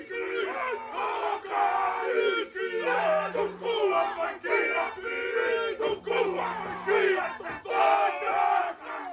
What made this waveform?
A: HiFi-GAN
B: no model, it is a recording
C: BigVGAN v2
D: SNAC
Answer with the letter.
B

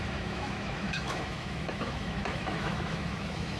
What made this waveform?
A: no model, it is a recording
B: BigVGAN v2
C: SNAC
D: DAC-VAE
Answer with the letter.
D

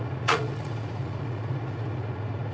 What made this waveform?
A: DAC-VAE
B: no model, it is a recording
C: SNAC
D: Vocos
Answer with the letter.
D